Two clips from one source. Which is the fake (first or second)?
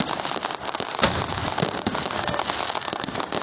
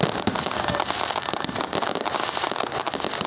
second